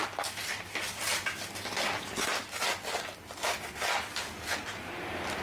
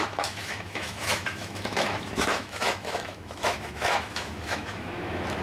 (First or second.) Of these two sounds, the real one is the first